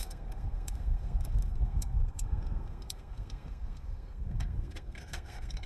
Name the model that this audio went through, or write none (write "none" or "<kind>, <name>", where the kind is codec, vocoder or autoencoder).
codec, SNAC